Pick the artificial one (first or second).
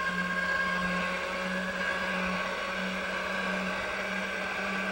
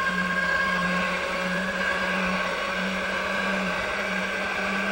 second